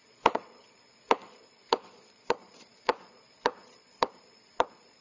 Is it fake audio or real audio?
fake